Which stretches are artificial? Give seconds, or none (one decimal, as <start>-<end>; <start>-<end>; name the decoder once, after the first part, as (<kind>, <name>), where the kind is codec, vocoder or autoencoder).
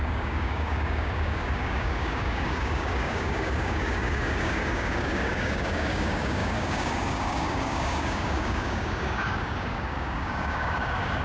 0.0-11.2 (codec, DAC)